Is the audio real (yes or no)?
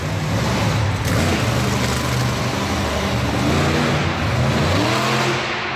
yes